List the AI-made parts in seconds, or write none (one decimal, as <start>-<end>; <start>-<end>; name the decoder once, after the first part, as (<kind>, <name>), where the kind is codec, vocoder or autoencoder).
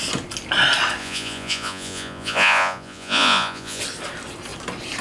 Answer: 1.0-3.8 (vocoder, Vocos)